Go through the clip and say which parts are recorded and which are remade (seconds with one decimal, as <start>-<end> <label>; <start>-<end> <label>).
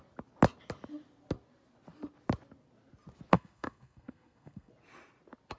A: 0.0-3.3 recorded; 3.3-4.7 remade; 4.7-5.6 recorded